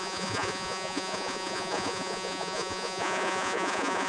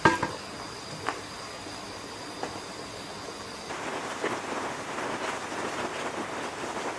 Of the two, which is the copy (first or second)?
first